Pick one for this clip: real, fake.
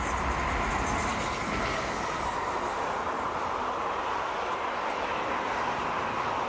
real